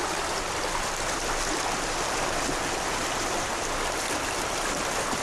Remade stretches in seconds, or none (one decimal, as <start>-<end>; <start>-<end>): none